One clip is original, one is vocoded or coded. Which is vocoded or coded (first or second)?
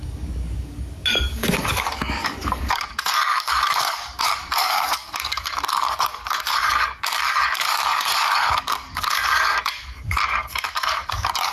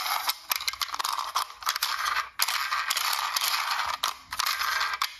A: first